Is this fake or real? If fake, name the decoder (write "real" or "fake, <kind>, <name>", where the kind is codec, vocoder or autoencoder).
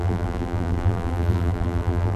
fake, vocoder, BigVGAN v2